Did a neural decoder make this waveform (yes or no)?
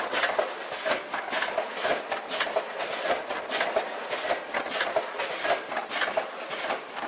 no